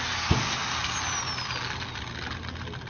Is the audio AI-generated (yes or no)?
no